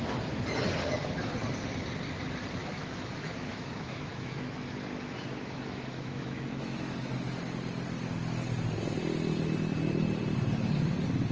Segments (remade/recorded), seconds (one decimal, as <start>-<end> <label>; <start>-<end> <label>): 0.0-2.6 recorded; 2.6-7.1 remade; 7.1-11.3 recorded